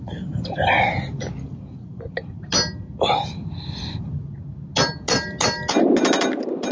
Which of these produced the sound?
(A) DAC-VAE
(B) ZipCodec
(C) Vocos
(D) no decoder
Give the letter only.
D